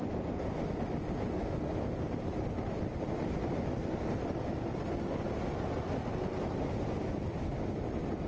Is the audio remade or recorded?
recorded